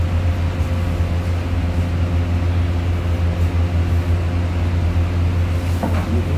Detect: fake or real real